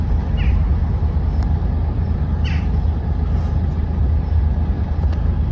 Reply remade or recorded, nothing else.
recorded